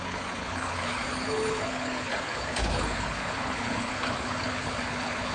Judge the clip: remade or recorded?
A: remade